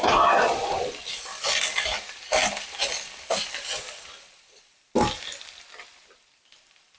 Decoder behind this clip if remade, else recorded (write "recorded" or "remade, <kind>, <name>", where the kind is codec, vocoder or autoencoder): recorded